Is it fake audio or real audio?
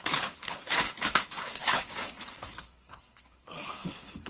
fake